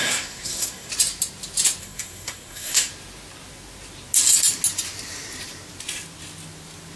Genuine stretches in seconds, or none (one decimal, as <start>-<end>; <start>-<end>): 0.9-1.8; 2.9-7.0